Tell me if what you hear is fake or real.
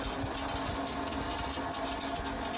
real